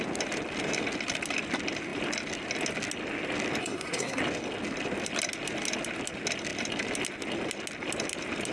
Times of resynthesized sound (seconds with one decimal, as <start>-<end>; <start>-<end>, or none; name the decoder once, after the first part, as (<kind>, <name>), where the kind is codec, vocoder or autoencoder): 3.6-4.2 (codec, SNAC)